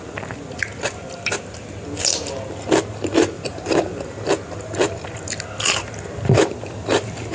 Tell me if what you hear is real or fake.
real